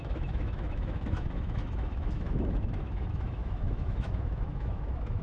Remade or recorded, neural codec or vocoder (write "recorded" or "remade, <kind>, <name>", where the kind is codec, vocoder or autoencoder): remade, autoencoder, DAC-VAE